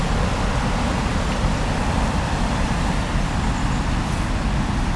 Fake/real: real